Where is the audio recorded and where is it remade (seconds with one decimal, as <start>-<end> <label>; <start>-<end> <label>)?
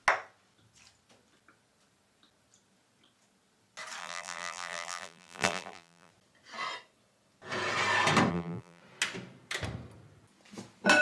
0.0-4.0 recorded; 4.0-6.1 remade; 6.1-8.3 recorded; 8.3-8.8 remade; 8.8-11.0 recorded